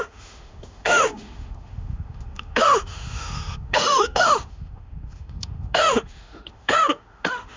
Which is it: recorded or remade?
remade